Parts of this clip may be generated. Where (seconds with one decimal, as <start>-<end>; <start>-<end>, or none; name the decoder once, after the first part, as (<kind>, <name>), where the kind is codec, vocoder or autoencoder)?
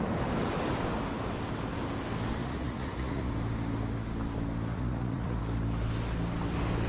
2.4-3.3 (vocoder, Vocos); 4.7-5.4